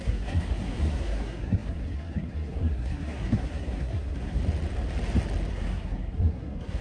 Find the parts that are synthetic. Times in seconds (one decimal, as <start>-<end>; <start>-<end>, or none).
0.0-4.4; 5.5-6.8